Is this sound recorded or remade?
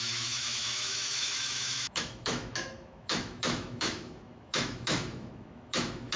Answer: remade